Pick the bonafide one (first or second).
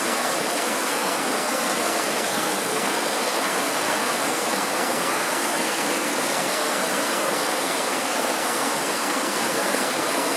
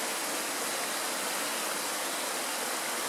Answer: second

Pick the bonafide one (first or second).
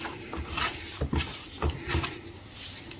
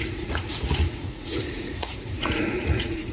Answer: first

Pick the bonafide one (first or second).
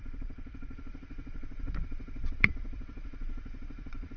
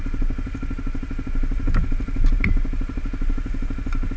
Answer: second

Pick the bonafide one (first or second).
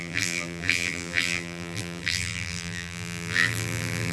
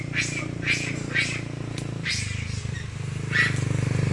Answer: second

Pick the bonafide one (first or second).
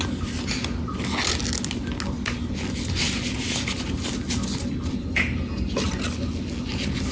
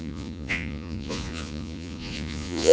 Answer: first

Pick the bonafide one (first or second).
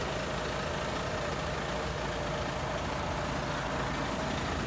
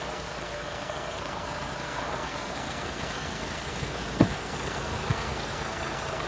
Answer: first